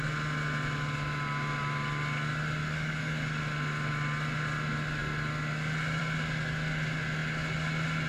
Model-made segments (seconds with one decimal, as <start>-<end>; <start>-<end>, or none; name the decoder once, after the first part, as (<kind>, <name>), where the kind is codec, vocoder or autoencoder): 2.6-3.4 (codec, DAC)